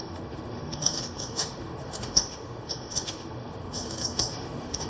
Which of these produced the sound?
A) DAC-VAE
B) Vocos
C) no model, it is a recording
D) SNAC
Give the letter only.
A